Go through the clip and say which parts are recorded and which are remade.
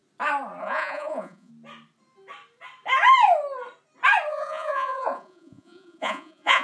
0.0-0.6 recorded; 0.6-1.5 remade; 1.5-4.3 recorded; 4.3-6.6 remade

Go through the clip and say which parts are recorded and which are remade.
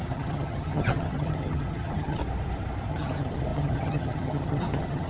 0.0-2.2 remade; 2.2-2.9 recorded; 2.9-5.1 remade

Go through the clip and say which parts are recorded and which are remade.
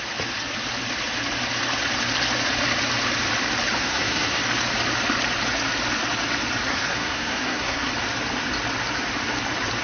0.0-3.8 recorded; 3.8-4.4 remade; 4.4-6.7 recorded; 6.7-7.9 remade; 7.9-9.8 recorded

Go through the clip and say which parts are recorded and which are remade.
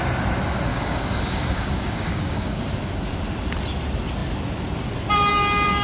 0.0-0.7 recorded; 0.7-2.6 remade; 2.6-5.8 recorded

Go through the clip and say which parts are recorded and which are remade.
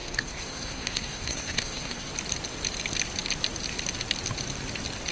0.0-2.1 remade; 2.1-5.1 recorded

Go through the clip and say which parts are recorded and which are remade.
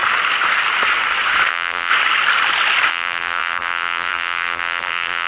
0.0-1.5 recorded; 1.5-1.9 remade; 1.9-2.9 recorded; 2.9-5.3 remade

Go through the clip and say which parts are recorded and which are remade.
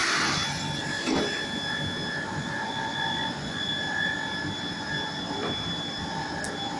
0.0-2.3 recorded; 2.3-3.7 remade; 3.7-6.8 recorded